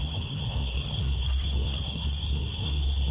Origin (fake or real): fake